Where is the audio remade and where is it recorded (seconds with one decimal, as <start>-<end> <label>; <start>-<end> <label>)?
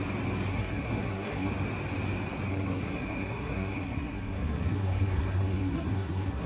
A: 0.0-0.5 recorded; 0.5-1.5 remade; 1.5-2.5 recorded; 2.5-6.5 remade